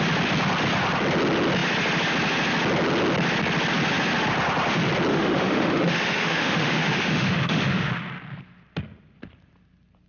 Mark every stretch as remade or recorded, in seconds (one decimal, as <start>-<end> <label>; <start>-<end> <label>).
0.0-5.1 recorded; 5.1-7.9 remade; 7.9-10.1 recorded